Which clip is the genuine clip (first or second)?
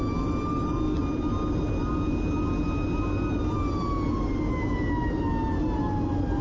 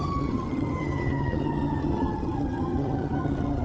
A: first